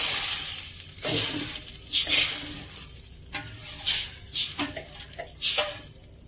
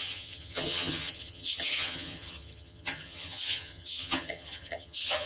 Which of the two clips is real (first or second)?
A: first